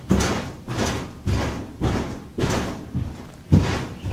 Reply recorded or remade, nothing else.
recorded